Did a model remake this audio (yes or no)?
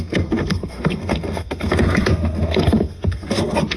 yes